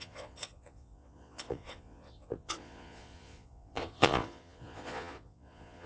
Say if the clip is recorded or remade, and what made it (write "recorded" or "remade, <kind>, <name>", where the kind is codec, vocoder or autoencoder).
remade, vocoder, Vocos